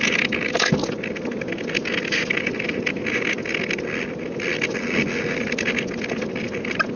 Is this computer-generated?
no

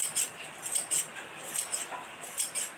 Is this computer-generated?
no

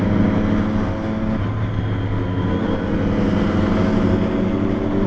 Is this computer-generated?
no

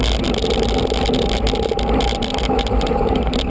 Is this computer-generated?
no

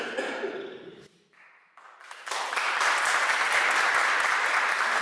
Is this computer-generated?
no